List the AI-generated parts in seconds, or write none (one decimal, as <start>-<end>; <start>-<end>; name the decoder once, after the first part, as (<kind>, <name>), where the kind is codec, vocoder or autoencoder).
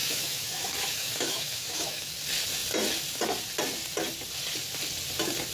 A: 0.0-2.1 (autoencoder, DAC-VAE)